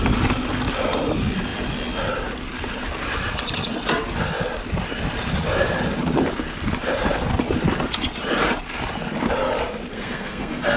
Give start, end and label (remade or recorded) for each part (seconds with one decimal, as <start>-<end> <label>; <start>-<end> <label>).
0.0-9.9 recorded; 9.9-10.8 remade